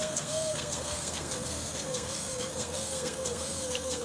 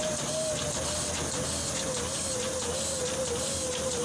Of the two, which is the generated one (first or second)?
first